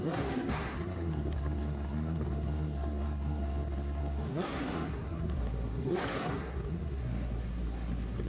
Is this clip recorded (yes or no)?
no